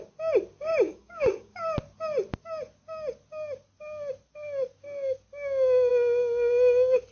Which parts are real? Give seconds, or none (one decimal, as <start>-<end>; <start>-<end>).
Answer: 0.0-0.9; 1.5-7.1